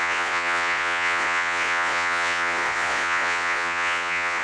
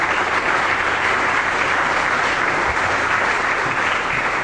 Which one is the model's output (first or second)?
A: first